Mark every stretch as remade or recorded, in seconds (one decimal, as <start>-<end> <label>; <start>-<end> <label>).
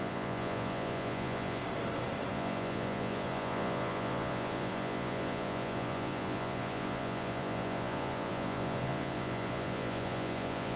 0.0-1.6 remade; 1.6-2.3 recorded; 2.3-10.8 remade